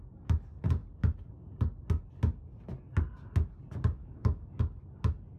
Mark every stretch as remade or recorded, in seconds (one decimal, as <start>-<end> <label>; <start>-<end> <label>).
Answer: 0.0-4.0 recorded; 4.0-4.6 remade; 4.6-5.4 recorded